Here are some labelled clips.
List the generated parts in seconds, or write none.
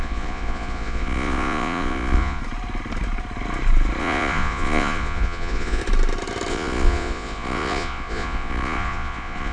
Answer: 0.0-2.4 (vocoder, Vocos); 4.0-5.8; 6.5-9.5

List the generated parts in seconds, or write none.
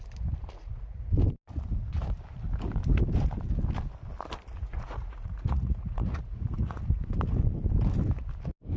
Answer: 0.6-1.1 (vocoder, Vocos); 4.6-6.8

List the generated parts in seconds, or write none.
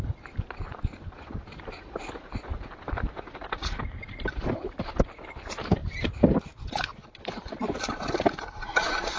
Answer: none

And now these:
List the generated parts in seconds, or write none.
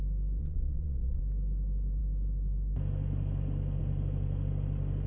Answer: 0.4-1.2 (vocoder, Vocos)